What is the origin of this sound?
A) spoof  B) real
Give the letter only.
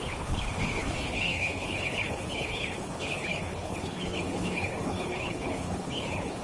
A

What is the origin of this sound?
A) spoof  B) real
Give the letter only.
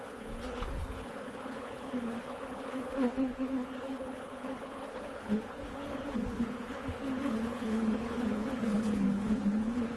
A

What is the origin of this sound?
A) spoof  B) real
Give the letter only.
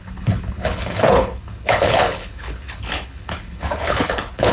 A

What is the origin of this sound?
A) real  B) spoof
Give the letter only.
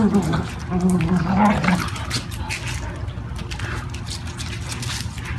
A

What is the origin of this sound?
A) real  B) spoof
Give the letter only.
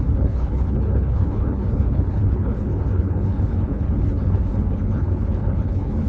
B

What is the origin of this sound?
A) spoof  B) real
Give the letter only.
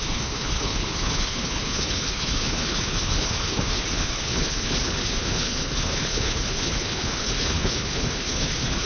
A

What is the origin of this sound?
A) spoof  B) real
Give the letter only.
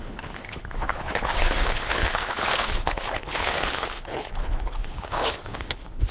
A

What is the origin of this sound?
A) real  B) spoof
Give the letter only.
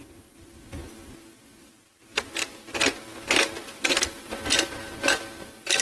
A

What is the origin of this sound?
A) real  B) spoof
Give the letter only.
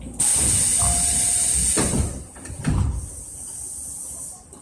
A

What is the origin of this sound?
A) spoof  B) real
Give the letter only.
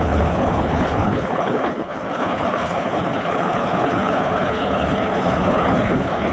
A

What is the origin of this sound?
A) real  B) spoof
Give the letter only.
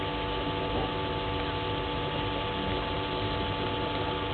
A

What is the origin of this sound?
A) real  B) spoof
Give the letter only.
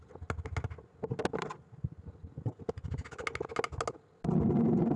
A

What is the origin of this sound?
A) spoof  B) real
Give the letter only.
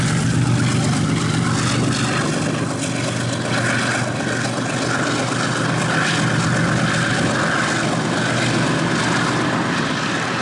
B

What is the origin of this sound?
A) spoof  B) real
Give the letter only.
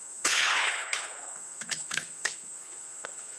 A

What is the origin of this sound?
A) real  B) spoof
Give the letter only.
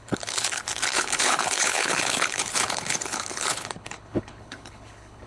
B